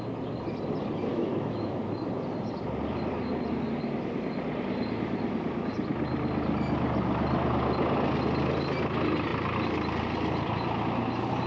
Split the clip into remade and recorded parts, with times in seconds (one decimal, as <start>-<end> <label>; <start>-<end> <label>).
0.0-1.1 recorded; 1.1-1.8 remade; 1.8-11.5 recorded